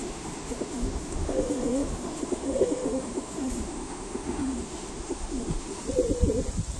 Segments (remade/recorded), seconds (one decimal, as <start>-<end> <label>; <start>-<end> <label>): 0.0-5.8 remade; 5.8-6.8 recorded